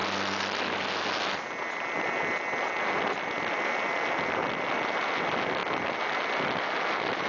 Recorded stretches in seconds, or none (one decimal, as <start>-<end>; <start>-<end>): 0.0-7.3